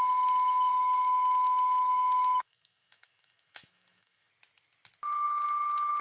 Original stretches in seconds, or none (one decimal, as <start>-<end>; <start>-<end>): 0.0-0.7; 4.3-6.0